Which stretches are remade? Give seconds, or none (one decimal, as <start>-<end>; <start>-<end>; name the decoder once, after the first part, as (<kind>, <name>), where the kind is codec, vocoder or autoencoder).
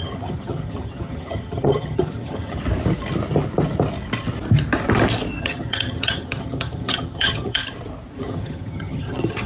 0.0-2.6 (vocoder, HiFi-GAN); 5.4-7.6; 8.2-9.5